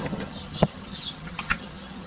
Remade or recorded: remade